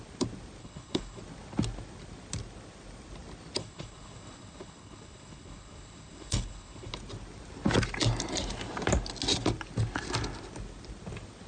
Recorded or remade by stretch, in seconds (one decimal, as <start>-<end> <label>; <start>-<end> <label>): 0.0-0.6 recorded; 0.6-1.2 remade; 1.2-3.6 recorded; 3.6-6.9 remade; 6.9-11.5 recorded